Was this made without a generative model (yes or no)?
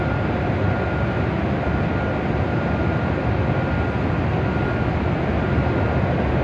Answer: yes